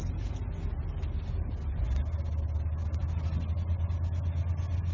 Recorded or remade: recorded